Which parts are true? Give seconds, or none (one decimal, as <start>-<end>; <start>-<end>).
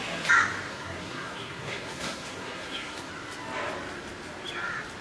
0.0-0.7; 3.1-5.0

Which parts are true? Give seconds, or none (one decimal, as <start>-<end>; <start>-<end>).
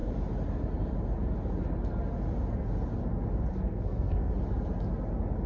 0.0-3.5; 4.3-5.5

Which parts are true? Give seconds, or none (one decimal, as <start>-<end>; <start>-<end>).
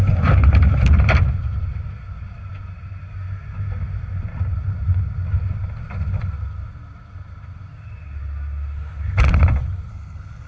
0.0-9.9